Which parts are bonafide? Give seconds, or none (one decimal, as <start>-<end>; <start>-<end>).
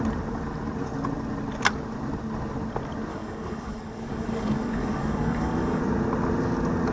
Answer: 0.0-3.1; 5.8-6.9